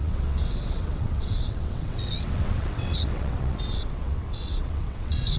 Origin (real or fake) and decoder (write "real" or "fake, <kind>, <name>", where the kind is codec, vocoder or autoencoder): fake, vocoder, WaveNeXt